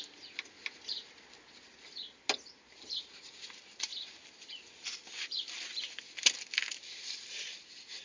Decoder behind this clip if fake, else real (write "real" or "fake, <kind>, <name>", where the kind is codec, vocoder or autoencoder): real